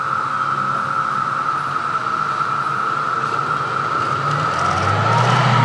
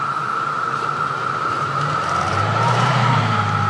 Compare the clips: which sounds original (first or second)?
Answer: first